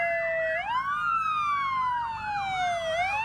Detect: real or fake real